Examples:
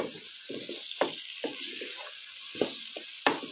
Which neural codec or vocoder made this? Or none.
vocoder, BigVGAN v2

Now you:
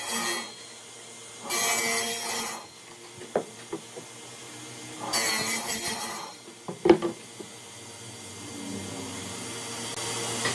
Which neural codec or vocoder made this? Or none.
none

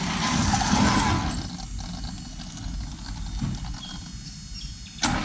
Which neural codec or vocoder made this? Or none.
none